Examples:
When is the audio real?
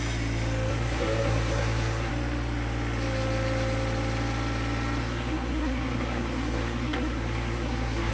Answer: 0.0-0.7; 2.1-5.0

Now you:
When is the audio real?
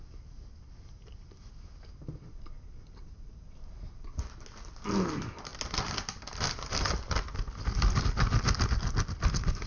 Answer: 0.0-9.7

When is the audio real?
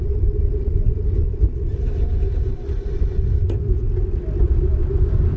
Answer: 0.0-5.4